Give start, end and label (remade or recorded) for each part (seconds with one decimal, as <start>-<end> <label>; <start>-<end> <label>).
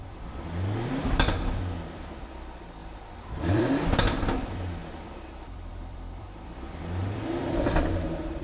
0.0-8.4 remade